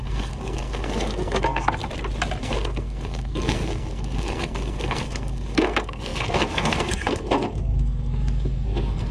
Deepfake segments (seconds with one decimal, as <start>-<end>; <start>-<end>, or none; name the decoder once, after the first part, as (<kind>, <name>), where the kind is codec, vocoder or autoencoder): 0.0-1.8 (codec, SNAC); 2.4-9.1